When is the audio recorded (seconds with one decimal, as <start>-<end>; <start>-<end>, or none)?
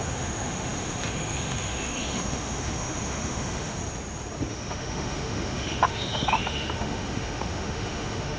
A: 3.8-4.5